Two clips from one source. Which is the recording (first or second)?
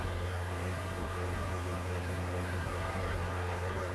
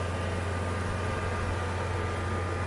second